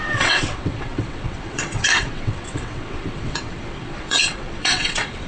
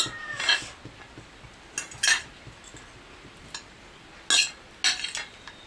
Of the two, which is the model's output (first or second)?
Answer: first